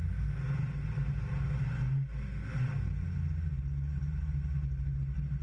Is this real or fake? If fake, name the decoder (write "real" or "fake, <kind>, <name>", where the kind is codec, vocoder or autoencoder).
real